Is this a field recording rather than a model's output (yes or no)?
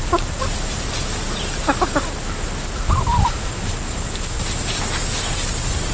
yes